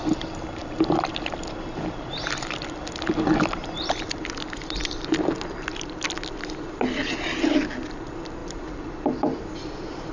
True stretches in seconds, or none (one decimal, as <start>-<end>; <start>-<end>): 0.0-0.6; 3.3-8.4